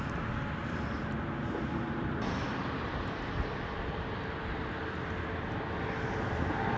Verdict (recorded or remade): recorded